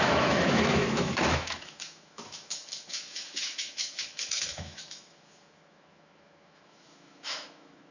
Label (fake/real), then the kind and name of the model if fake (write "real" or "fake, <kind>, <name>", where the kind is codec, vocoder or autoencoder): fake, autoencoder, DAC-VAE